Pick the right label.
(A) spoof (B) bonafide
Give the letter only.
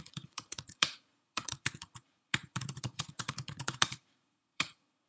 A